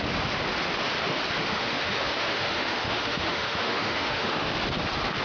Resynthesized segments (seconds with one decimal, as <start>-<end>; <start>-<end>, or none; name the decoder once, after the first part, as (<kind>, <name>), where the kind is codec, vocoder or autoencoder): 1.4-4.5 (autoencoder, DAC-VAE)